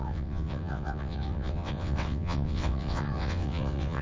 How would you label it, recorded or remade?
remade